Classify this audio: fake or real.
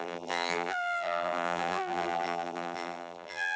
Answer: fake